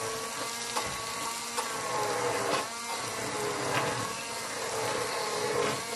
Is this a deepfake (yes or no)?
no